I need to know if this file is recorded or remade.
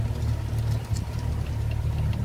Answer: recorded